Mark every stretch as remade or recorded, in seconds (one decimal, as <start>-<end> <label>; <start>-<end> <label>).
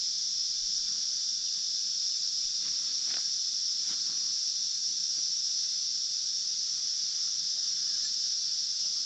0.0-9.1 recorded